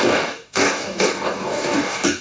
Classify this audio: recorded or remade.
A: remade